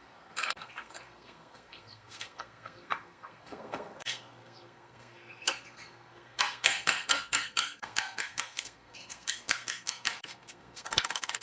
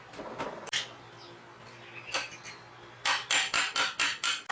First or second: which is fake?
first